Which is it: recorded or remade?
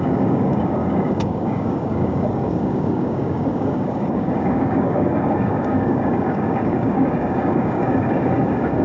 remade